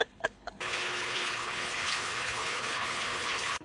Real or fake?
fake